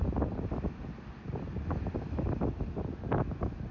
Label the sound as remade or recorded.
recorded